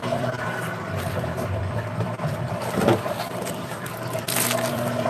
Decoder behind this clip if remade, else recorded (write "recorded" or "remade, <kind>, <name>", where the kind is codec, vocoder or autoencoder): remade, vocoder, BigVGAN v2